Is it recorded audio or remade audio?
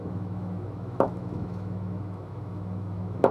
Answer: remade